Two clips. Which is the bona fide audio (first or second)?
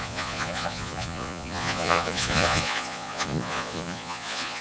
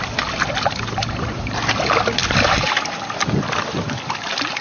second